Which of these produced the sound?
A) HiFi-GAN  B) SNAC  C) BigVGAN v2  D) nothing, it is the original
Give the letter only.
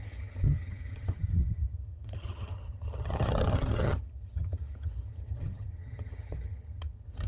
A